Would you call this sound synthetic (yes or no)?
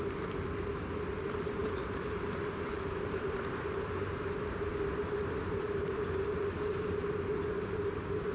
yes